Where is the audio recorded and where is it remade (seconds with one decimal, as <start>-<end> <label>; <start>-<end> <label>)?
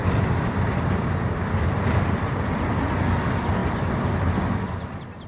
0.0-5.3 recorded